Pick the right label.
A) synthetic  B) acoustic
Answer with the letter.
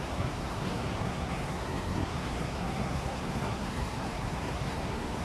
A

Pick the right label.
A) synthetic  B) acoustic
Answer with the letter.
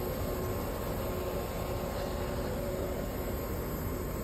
B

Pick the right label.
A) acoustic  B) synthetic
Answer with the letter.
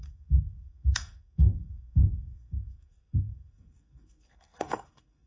B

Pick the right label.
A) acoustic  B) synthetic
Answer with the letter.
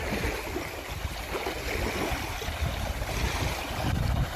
A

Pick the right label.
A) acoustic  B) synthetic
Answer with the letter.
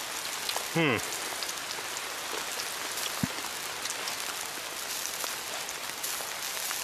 A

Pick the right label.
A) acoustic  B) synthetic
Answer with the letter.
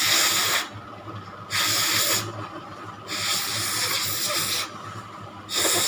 A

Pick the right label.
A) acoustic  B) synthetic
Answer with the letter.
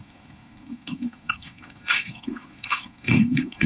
B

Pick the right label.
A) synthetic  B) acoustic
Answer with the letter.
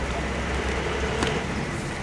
B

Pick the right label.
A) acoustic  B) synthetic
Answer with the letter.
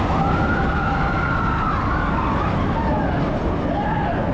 A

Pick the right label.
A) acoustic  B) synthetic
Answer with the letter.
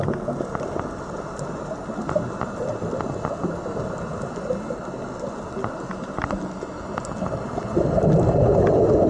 A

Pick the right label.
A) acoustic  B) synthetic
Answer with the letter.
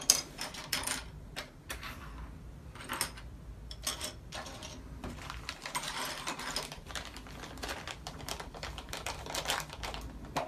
A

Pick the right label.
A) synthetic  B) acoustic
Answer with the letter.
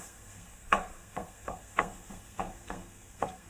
A